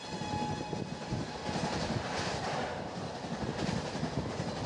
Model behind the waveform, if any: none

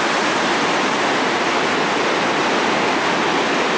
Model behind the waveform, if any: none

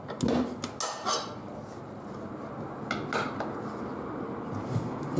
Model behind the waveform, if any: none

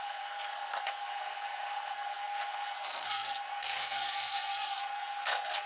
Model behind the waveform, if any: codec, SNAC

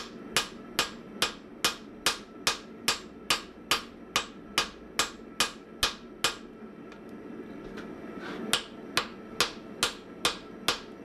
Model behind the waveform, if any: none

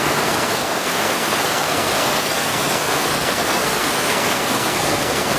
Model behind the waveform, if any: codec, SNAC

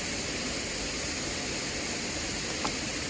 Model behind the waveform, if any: none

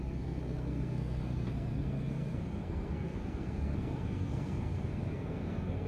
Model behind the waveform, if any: codec, SNAC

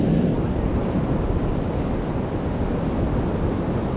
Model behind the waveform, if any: none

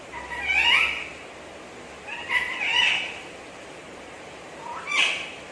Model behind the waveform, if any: none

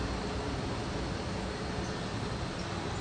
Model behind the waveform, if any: none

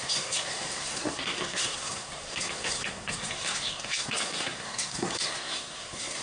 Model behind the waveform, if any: codec, SNAC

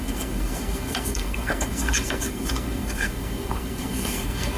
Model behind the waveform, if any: codec, SNAC